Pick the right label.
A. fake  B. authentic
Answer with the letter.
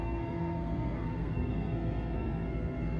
A